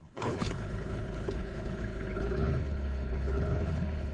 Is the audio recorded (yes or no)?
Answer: no